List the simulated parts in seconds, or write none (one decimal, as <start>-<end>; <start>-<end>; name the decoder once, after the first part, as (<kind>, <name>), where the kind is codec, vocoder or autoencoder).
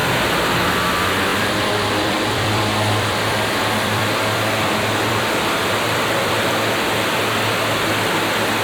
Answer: 1.3-6.5 (vocoder, BigVGAN v2)